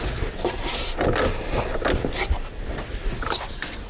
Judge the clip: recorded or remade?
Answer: recorded